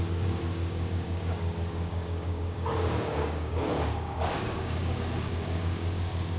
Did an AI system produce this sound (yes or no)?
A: yes